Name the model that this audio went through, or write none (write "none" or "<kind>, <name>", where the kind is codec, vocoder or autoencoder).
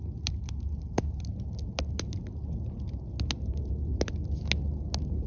none